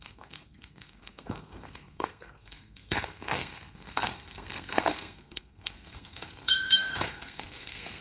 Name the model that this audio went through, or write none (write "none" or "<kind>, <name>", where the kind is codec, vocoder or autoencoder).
codec, SNAC